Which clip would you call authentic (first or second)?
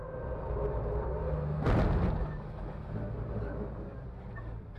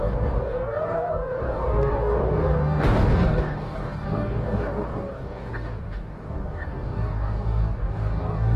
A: first